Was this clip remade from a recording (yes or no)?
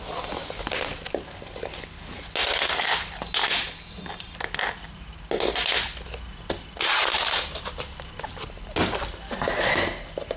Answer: no